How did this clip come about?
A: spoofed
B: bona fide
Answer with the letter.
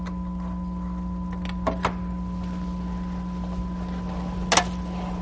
B